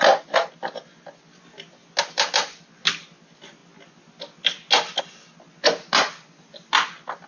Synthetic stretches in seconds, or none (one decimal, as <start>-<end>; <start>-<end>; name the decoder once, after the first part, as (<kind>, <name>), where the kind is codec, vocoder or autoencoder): none